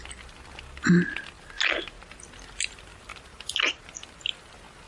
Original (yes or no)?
yes